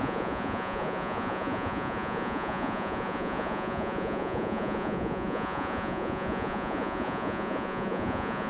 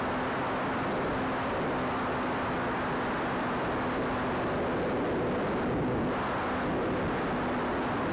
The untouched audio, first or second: second